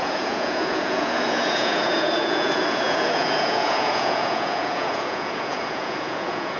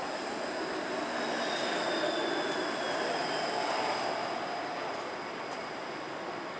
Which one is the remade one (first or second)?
first